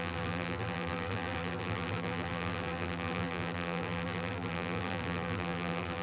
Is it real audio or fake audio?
fake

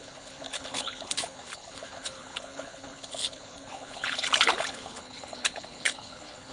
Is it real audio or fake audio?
fake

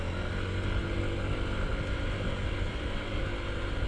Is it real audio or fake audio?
real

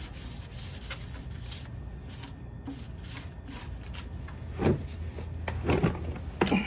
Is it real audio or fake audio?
real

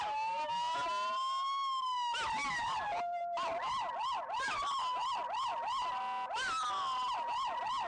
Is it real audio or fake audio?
real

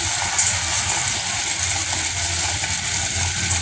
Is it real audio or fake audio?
real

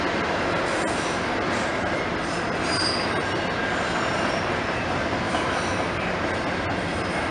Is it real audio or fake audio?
real